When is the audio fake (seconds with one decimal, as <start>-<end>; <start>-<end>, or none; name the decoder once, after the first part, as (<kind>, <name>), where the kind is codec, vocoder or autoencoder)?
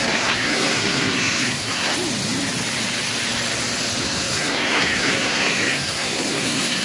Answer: 0.0-1.9 (codec, SNAC); 4.0-6.8